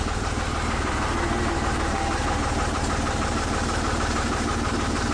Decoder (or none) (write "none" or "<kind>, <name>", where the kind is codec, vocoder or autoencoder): vocoder, BigVGAN v2